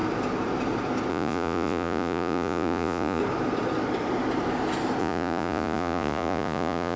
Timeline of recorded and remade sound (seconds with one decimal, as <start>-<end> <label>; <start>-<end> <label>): 0.0-1.1 recorded; 1.1-3.2 remade; 3.2-5.0 recorded; 5.0-7.0 remade